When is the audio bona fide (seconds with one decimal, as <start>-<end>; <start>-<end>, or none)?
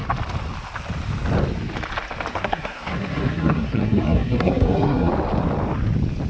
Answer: 0.0-2.3; 5.1-6.3